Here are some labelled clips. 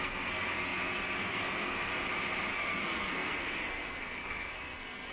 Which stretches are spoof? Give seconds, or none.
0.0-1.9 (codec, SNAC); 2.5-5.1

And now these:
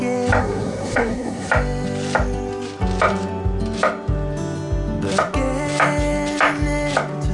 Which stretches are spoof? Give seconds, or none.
0.4-1.5 (codec, SNAC)

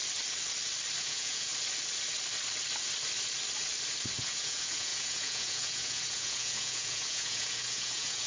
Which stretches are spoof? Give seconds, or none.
1.0-1.5 (vocoder, Vocos); 4.2-8.3

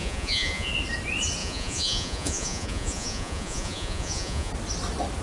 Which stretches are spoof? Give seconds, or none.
0.0-0.7 (vocoder, Vocos); 1.4-4.5

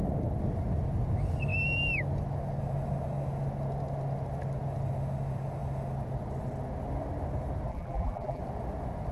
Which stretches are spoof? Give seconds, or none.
7.7-8.4 (vocoder, BigVGAN v2)